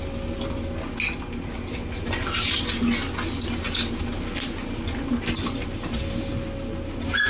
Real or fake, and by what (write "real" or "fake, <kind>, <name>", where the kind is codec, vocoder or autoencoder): real